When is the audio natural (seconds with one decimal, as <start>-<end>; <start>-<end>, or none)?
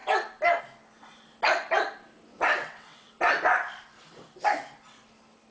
0.0-2.3; 3.1-5.5